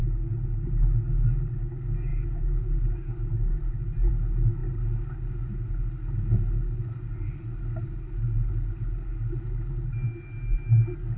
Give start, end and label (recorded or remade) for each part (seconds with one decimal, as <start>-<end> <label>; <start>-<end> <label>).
0.0-11.2 recorded